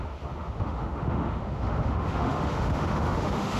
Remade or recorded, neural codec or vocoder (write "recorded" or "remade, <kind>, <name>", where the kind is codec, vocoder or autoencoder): remade, autoencoder, DAC-VAE